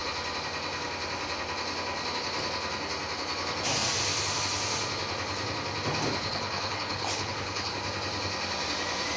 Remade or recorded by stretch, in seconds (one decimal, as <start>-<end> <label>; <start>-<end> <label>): 0.0-6.3 recorded; 6.3-7.7 remade; 7.7-9.2 recorded